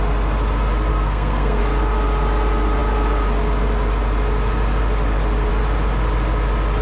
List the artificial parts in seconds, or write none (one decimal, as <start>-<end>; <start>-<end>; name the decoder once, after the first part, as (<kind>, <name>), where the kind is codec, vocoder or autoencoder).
0.9-1.6 (codec, SNAC)